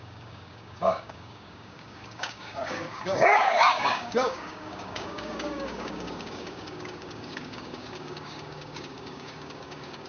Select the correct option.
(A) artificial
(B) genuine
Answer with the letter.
A